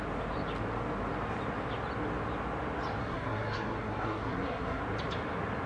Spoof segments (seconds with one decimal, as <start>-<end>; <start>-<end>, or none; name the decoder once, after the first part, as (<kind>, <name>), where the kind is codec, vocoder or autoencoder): 3.0-4.8 (codec, SNAC)